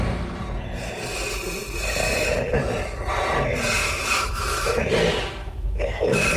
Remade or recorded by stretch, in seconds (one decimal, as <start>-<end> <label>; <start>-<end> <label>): 0.0-3.8 recorded; 3.8-4.9 remade; 4.9-5.4 recorded; 5.4-5.9 remade; 5.9-6.4 recorded